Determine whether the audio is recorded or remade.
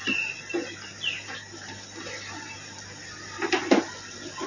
recorded